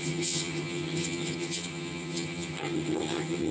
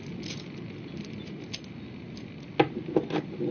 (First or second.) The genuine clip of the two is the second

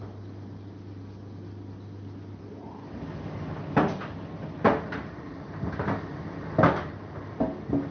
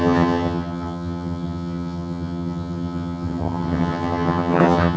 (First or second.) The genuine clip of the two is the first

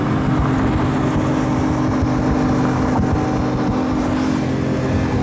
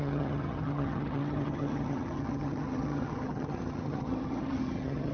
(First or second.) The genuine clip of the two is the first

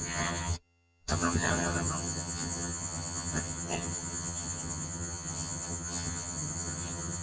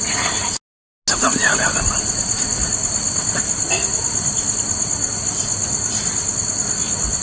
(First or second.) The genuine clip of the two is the second